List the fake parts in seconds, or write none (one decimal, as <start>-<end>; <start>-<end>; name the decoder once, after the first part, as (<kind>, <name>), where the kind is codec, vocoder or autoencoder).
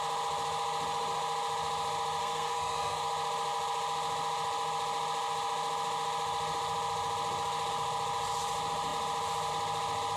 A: 2.2-3.0 (codec, SNAC)